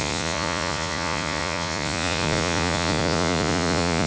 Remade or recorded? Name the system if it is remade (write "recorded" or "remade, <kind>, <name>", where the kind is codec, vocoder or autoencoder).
remade, vocoder, Vocos